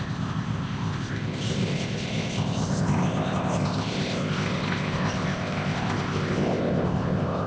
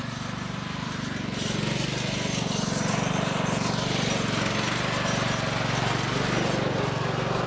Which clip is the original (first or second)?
second